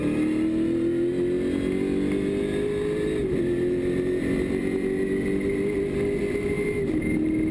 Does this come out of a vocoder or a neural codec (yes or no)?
no